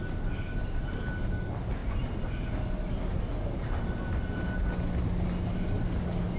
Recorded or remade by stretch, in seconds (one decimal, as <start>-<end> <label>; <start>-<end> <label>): 0.0-6.4 recorded